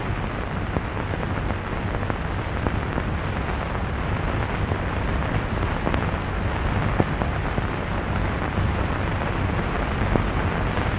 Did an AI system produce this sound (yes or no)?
no